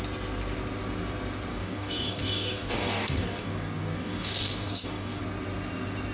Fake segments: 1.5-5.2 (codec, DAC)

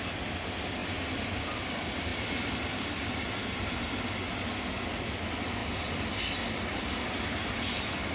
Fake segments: none

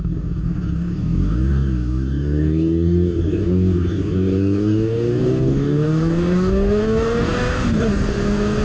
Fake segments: 0.0-8.6 (codec, DAC)

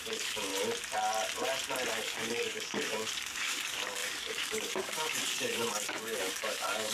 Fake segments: 0.0-0.5 (codec, DAC); 1.9-6.9

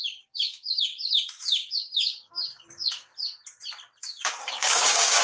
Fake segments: 0.0-3.1 (codec, DAC); 4.0-5.2

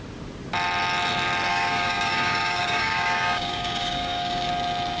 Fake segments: 1.5-4.5 (codec, DAC)

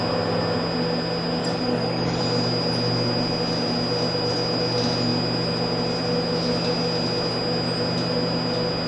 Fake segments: 1.4-2.2 (codec, DAC)

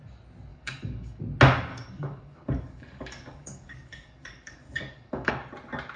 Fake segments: 0.5-1.2 (codec, DAC); 1.7-5.3